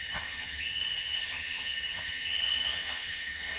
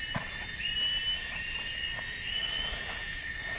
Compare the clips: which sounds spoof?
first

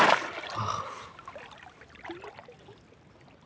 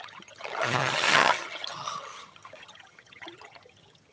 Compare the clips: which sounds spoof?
second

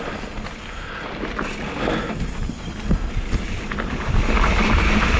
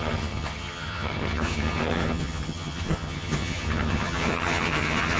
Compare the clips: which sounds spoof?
second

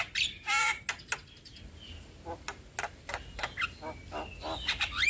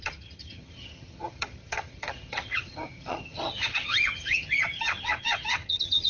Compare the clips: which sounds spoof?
second